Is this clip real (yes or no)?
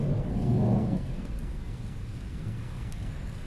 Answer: no